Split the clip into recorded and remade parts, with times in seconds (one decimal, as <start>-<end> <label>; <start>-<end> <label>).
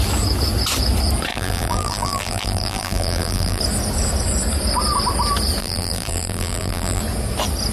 0.0-1.3 recorded; 1.3-3.6 remade; 3.6-5.6 recorded; 5.6-7.0 remade; 7.0-7.7 recorded